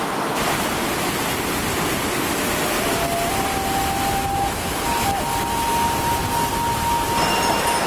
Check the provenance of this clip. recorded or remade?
recorded